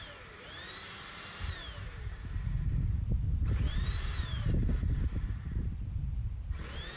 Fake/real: fake